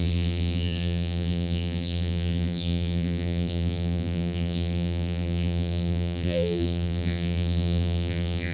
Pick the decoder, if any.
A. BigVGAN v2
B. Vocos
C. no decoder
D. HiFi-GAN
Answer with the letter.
A